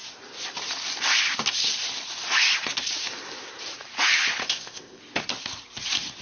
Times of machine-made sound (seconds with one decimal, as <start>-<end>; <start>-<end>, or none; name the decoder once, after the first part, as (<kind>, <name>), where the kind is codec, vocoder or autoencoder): 4.4-5.0 (codec, ZipCodec)